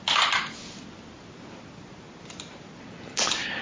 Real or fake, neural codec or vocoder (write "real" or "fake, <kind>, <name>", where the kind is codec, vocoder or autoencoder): real